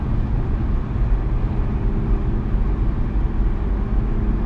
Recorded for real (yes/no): yes